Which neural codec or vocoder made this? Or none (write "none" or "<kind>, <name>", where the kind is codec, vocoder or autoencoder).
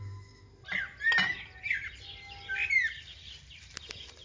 none